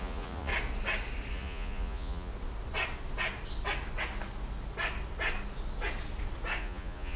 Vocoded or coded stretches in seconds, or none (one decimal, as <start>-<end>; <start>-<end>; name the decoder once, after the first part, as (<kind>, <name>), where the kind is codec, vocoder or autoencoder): 0.0-0.5 (vocoder, Vocos); 1.3-2.3; 6.6-7.2